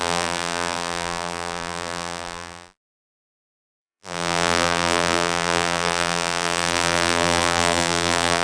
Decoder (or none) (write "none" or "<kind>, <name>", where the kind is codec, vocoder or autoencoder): vocoder, BigVGAN v2